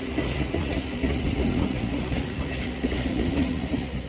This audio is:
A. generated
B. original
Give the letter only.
A